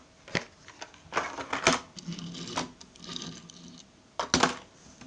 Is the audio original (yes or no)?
yes